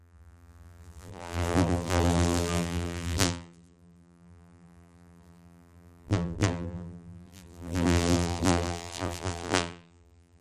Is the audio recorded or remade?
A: remade